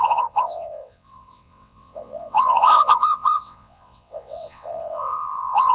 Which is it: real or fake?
fake